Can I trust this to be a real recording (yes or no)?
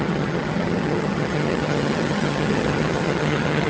no